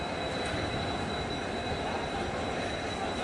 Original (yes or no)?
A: yes